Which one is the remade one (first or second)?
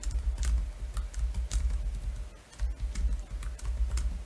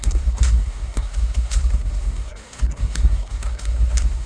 second